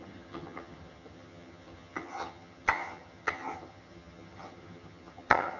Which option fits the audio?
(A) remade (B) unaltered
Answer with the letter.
A